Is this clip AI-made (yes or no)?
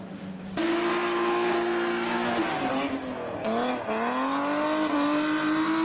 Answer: no